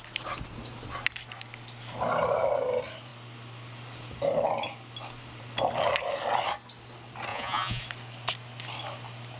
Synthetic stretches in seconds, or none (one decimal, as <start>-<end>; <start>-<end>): 7.3-7.8

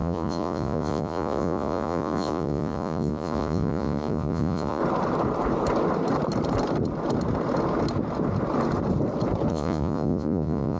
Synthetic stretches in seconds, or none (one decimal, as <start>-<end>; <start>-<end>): 0.0-4.8; 9.5-10.8

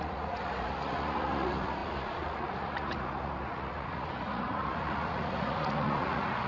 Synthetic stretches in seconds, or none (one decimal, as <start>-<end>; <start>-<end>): 0.0-6.5

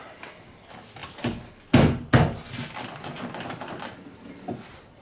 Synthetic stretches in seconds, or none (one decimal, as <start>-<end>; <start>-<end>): none

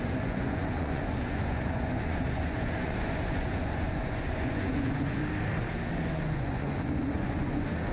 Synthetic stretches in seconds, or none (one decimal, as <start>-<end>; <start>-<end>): 0.0-5.2; 6.0-7.9

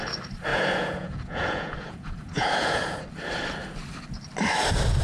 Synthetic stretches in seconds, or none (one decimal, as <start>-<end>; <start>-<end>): 0.5-3.0